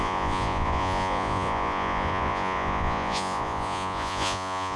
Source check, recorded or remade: remade